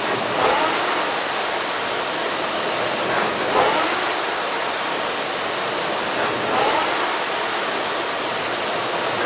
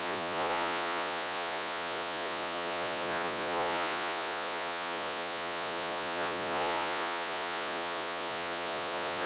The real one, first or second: first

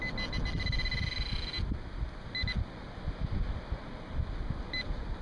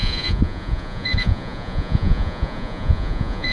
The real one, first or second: first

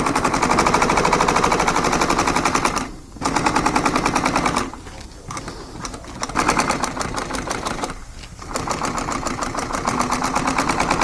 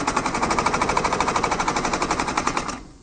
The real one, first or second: first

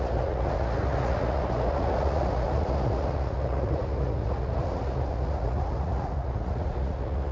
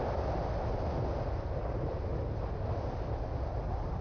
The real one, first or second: second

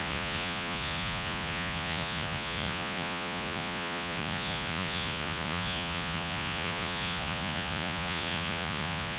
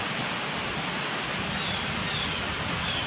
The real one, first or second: second